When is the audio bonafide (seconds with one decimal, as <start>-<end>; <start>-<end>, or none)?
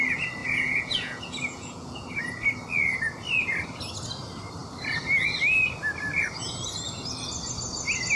0.0-0.4; 2.2-8.2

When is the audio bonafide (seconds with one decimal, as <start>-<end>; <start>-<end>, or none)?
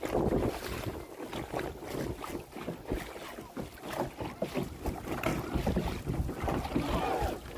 0.0-7.6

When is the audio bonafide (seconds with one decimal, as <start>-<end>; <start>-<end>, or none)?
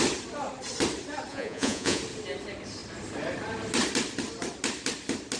0.0-1.3; 2.0-5.4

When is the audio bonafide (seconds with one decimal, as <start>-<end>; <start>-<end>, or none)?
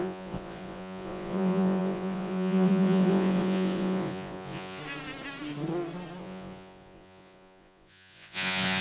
4.8-6.2